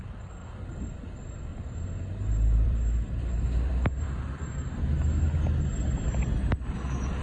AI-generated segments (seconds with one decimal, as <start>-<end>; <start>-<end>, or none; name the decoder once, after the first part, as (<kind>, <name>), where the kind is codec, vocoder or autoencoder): 0.4-1.1 (vocoder, BigVGAN v2); 1.5-4.8